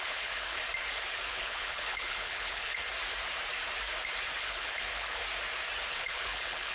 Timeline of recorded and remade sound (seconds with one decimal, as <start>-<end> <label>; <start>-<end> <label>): 0.0-0.6 remade; 0.6-1.3 recorded; 1.3-2.8 remade; 2.8-4.4 recorded; 4.4-5.2 remade; 5.2-5.9 recorded; 5.9-6.7 remade